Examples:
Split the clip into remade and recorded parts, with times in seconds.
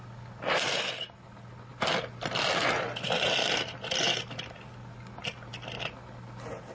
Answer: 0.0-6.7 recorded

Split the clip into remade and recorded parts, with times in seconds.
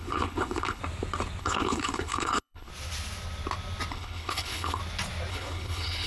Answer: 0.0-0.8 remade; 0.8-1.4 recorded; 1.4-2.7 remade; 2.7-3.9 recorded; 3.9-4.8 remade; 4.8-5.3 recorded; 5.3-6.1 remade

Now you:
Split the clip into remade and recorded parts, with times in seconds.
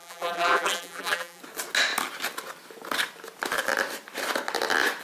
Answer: 0.0-1.4 remade; 1.4-5.0 recorded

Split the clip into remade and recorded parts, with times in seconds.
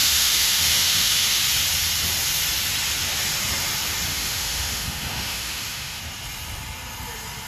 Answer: 0.0-1.4 remade; 1.4-4.1 recorded; 4.1-6.0 remade; 6.0-7.5 recorded